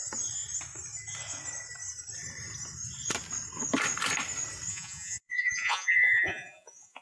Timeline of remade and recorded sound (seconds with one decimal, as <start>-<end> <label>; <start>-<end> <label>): 0.0-4.7 recorded; 4.7-7.0 remade